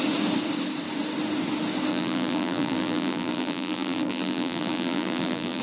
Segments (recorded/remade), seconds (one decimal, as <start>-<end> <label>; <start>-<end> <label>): 0.0-1.9 recorded; 1.9-5.6 remade